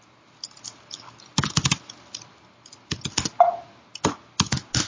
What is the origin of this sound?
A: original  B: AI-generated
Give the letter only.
A